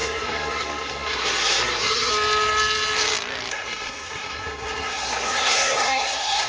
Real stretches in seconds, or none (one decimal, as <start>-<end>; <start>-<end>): 2.1-3.5